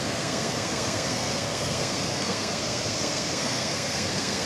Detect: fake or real fake